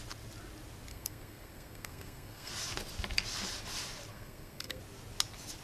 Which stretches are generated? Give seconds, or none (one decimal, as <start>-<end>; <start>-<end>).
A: 0.9-2.5; 4.1-4.8

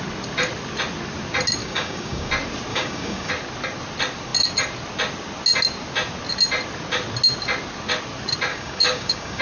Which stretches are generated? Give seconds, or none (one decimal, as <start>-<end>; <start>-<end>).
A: 1.6-2.3; 2.7-3.3; 8.5-9.4